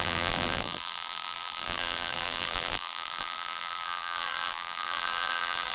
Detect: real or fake fake